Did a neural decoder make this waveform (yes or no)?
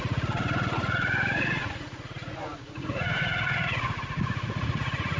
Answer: yes